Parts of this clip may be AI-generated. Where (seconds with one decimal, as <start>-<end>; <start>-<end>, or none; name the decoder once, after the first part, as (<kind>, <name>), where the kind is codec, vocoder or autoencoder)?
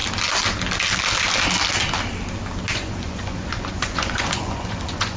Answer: 2.7-5.2 (vocoder, Vocos)